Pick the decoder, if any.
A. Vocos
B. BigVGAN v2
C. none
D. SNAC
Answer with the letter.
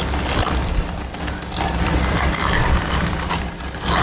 C